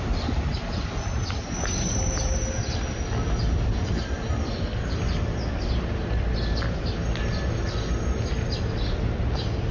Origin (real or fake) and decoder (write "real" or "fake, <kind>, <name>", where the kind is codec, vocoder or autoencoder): real